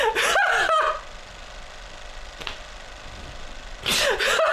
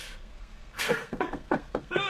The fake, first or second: second